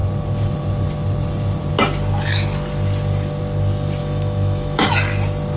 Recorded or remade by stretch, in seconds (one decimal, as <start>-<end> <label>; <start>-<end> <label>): 0.0-4.0 recorded; 4.0-4.9 remade; 4.9-5.6 recorded